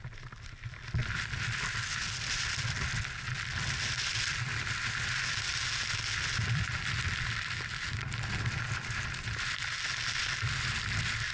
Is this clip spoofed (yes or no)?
no